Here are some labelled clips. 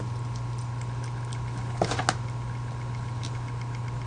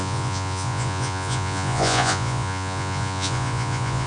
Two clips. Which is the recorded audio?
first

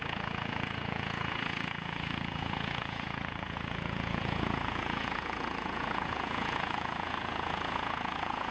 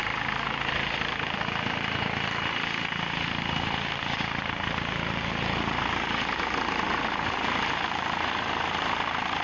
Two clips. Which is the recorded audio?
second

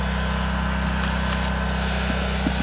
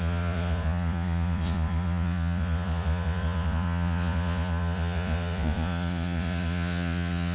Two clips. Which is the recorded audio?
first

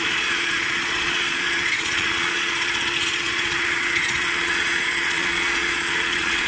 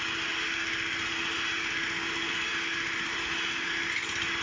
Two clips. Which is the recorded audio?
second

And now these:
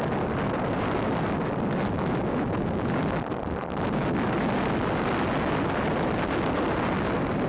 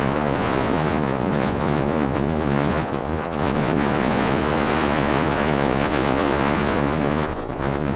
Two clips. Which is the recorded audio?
first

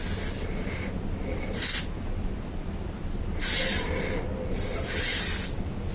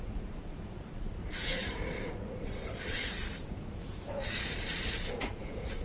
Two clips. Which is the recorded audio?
first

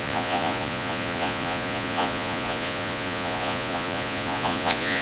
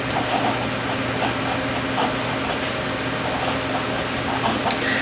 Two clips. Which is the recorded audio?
second